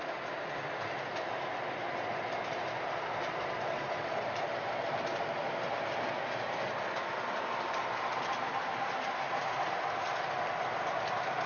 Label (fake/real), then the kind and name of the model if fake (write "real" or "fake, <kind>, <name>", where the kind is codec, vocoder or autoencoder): real